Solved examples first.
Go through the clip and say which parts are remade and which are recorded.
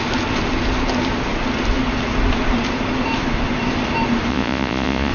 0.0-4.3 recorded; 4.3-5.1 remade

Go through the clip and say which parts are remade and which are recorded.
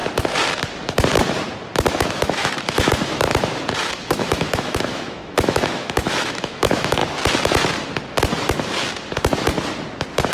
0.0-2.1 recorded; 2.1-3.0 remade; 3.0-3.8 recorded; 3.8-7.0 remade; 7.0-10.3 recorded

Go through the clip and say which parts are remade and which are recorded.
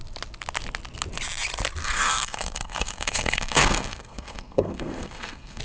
0.0-1.8 recorded; 1.8-5.6 remade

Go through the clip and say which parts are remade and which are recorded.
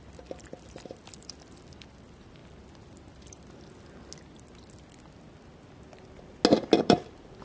0.0-2.4 remade; 2.4-6.8 recorded; 6.8-7.4 remade